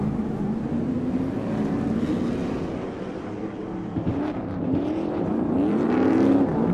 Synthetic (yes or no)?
no